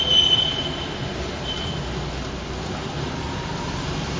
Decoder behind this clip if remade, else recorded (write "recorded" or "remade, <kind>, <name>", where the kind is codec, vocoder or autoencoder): recorded